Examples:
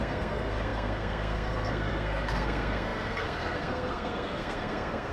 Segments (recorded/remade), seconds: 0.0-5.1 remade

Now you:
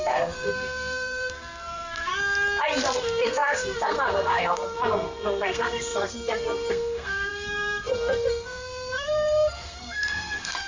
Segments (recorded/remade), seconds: 0.0-2.1 remade; 2.1-3.0 recorded; 3.0-10.7 remade